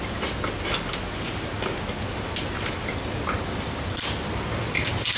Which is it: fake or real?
real